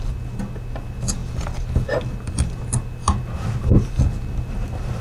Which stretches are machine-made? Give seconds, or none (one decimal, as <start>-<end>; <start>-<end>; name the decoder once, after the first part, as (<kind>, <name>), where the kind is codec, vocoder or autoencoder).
none

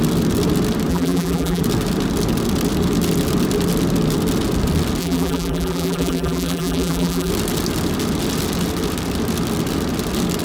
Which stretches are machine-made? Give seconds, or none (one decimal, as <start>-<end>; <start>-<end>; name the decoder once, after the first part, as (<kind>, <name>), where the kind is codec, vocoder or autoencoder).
0.9-1.6 (vocoder, BigVGAN v2); 5.0-7.3

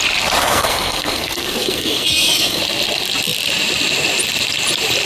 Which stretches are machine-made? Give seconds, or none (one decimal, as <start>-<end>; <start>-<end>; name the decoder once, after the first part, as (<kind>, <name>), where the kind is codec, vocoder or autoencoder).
0.4-2.6 (codec, SNAC)